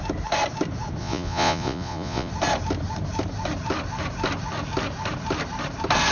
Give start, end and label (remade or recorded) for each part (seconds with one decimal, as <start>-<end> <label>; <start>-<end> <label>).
0.0-1.0 recorded; 1.0-2.3 remade; 2.3-6.1 recorded